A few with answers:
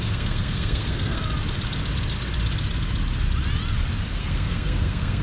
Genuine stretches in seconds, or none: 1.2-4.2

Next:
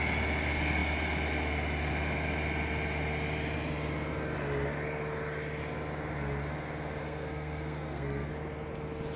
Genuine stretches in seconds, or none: 0.0-7.0; 8.3-9.2

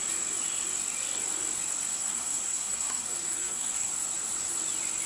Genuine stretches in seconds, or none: 0.0-1.9; 3.9-5.1